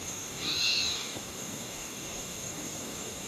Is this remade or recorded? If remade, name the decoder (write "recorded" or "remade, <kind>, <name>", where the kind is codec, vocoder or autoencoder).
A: remade, codec, DAC